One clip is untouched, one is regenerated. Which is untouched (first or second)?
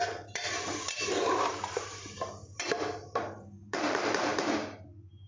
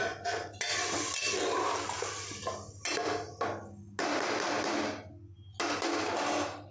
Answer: second